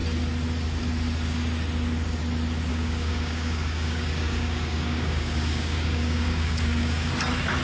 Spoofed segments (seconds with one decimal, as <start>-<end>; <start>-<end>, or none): 2.7-7.1